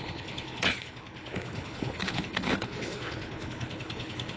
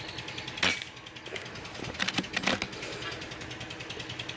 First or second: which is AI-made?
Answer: first